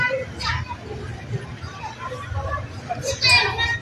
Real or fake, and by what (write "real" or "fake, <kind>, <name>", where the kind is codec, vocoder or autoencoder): real